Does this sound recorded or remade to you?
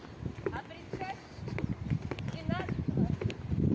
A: recorded